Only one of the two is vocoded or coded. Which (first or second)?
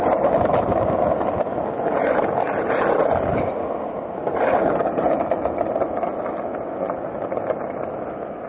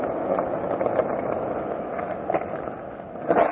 second